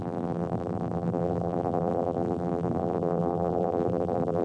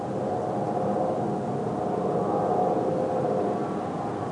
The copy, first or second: first